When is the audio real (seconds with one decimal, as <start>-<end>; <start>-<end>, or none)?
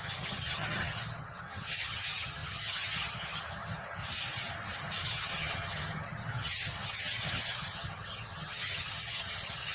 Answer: 4.0-5.0